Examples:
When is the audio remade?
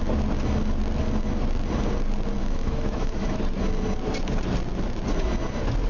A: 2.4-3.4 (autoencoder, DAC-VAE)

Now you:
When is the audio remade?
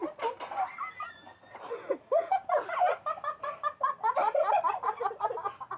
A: none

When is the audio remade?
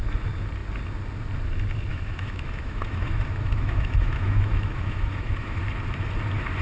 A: 1.9-5.6 (autoencoder, DAC-VAE)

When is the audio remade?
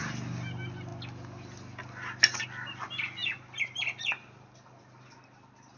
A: none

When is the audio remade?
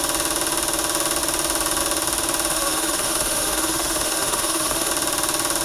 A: 2.5-4.9 (autoencoder, DAC-VAE)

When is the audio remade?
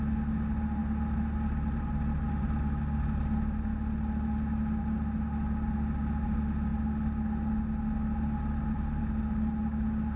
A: none